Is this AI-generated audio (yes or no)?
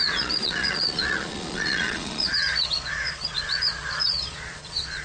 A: yes